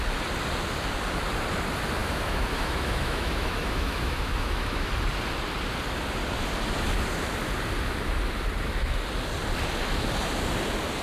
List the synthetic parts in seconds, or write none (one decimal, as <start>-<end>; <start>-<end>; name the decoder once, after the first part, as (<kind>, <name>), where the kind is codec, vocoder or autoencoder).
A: 2.0-4.9 (autoencoder, DAC-VAE)